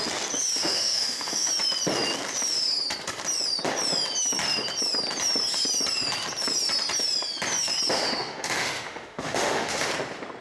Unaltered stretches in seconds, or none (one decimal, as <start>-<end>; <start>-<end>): 0.0-0.6; 1.5-7.9; 9.9-10.4